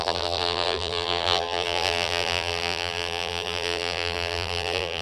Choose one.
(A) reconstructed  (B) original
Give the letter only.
A